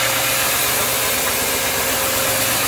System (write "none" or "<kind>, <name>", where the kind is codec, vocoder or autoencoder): none